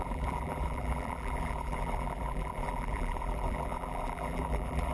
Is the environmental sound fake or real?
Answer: fake